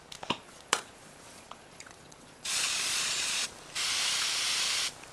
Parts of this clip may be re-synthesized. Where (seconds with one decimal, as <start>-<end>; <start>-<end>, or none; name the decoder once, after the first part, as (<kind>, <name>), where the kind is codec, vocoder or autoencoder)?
0.4-3.5 (vocoder, Vocos)